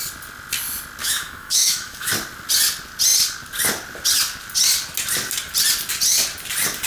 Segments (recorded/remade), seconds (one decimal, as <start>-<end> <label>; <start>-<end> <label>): 0.0-1.0 recorded; 1.0-2.1 remade; 2.1-6.9 recorded